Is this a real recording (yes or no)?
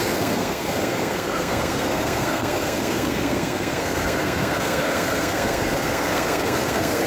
no